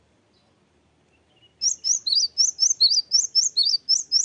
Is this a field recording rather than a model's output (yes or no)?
yes